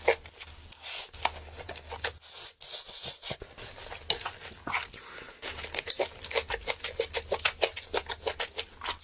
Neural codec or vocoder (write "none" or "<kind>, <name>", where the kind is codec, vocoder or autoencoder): none